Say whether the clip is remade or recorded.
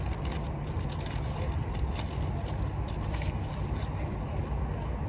recorded